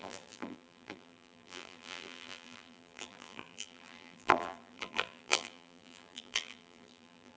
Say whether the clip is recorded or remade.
remade